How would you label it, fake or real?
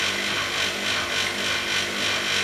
real